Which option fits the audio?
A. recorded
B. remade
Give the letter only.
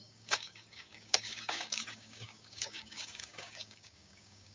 B